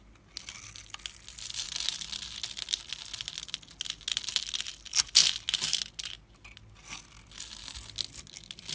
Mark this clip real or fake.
real